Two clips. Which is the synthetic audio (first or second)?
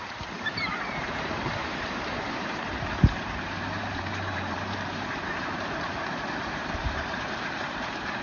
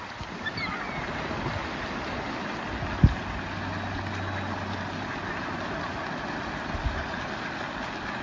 first